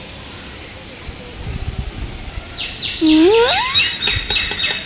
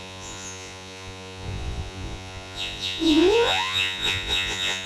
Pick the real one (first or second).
first